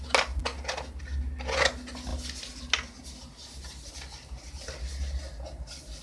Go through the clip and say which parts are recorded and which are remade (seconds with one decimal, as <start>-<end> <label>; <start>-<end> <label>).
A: 0.0-6.0 recorded